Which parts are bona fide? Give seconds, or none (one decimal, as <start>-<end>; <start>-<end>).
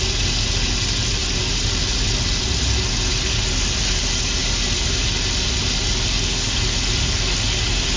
0.0-8.0